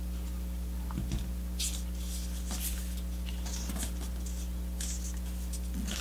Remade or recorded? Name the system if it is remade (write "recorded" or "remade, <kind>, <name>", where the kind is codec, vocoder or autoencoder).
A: recorded